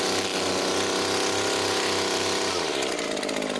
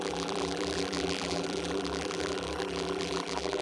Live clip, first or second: first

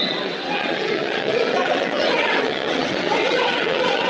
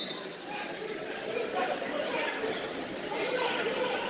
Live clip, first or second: second